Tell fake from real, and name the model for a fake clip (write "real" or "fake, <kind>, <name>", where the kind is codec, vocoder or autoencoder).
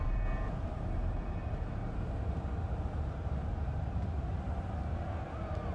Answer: fake, vocoder, BigVGAN v2